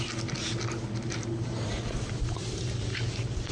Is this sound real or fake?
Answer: real